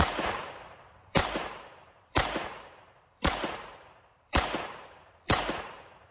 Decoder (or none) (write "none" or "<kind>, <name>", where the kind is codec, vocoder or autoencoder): vocoder, BigVGAN v2